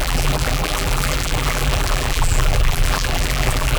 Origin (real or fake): fake